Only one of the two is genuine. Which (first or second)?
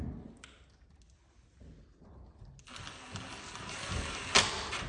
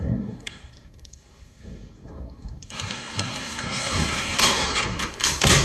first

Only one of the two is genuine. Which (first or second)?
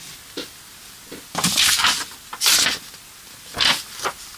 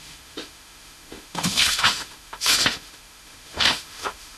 first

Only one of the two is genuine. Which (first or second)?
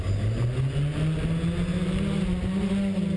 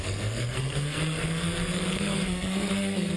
first